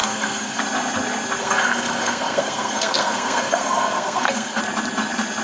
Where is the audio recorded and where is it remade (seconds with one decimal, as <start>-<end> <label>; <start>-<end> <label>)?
0.0-0.6 remade; 0.6-1.4 recorded; 1.4-4.6 remade; 4.6-5.4 recorded